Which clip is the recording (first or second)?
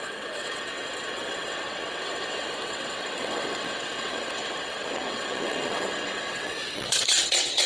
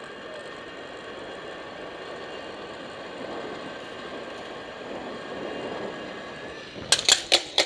second